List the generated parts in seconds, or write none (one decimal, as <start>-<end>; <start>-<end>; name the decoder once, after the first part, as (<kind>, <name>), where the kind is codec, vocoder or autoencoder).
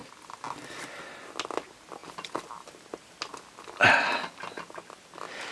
none